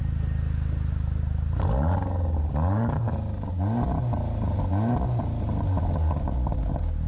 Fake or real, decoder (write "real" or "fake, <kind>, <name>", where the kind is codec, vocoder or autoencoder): real